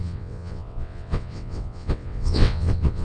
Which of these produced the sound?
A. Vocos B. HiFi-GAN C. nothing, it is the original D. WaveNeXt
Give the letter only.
D